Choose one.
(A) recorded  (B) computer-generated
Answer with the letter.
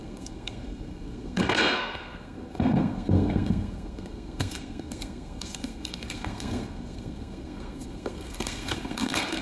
B